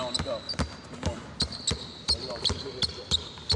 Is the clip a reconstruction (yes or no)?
no